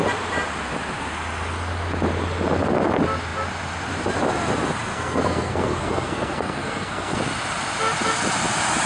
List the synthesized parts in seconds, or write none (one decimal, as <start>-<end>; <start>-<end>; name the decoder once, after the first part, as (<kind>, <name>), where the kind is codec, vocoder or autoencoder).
4.9-7.2 (codec, SNAC)